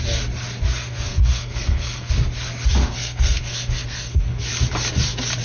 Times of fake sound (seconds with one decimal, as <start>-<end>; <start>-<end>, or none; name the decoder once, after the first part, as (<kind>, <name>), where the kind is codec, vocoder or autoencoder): 0.8-2.1 (codec, SNAC); 2.8-4.4